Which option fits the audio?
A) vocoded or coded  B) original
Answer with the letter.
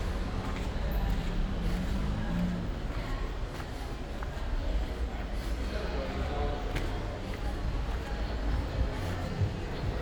B